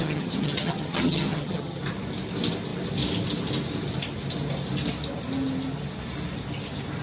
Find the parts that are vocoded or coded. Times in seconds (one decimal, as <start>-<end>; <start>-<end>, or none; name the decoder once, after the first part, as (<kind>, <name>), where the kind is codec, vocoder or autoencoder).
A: 0.0-1.8 (vocoder, HiFi-GAN)

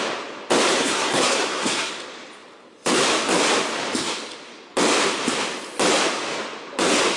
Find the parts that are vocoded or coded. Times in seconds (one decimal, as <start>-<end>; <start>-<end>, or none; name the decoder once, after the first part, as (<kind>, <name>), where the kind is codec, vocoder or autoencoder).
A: 0.7-1.9 (codec, SNAC)

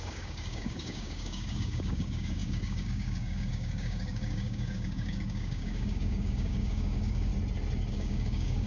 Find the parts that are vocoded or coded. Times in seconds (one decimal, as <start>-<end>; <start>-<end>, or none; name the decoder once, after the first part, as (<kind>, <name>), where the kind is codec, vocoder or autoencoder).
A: 0.0-7.3 (codec, DAC); 7.9-8.7

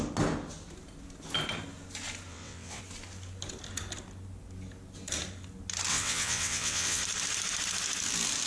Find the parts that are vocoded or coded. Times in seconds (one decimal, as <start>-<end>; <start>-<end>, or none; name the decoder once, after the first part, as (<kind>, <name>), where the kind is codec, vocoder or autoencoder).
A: 2.3-2.8 (vocoder, WaveNeXt); 5.9-7.0

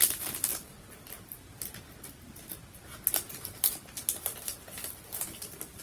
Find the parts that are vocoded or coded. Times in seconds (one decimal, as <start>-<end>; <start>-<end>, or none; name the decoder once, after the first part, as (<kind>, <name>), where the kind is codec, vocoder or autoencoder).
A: none